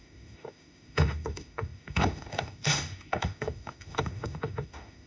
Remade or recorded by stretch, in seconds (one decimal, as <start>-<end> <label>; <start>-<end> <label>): 0.0-5.1 remade